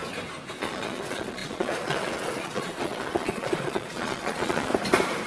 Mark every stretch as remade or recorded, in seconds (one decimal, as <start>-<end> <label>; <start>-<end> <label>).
0.0-0.6 recorded; 0.6-4.7 remade; 4.7-5.3 recorded